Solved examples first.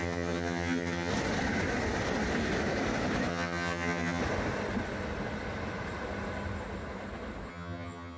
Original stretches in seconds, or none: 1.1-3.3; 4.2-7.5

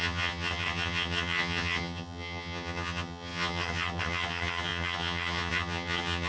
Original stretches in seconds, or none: none

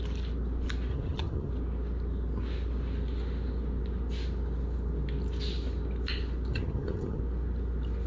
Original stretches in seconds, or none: 0.0-0.9; 1.5-6.5; 7.2-8.1

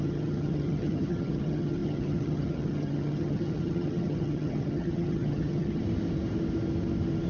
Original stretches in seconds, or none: 5.8-7.3

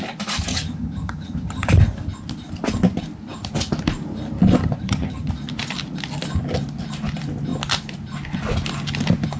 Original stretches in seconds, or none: 0.0-0.5; 1.7-4.6; 5.3-9.4